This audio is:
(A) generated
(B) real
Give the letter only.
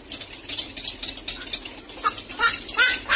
B